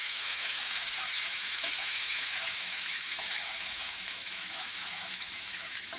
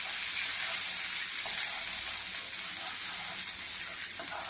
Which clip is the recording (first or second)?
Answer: second